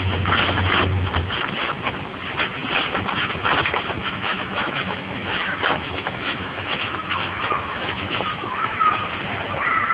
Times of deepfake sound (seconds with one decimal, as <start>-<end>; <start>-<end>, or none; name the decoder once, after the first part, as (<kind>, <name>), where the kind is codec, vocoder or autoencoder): 4.0-8.9 (autoencoder, DAC-VAE)